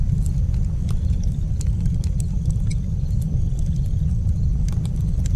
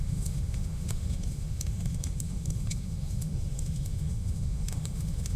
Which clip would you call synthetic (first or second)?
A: second